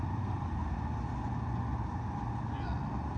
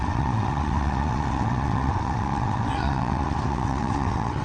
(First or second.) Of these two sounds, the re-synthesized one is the second